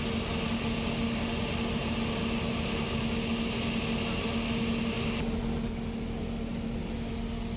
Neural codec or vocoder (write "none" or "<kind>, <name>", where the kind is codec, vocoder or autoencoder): none